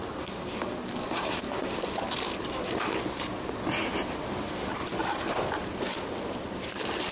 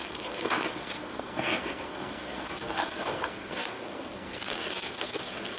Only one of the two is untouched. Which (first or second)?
first